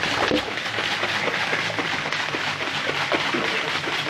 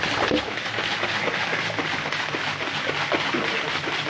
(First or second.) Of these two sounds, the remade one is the first